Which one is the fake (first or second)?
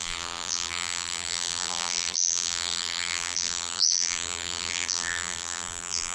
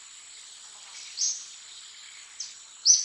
first